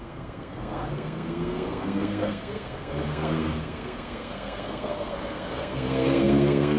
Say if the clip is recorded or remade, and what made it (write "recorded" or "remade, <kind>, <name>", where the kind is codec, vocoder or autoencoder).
remade, codec, SNAC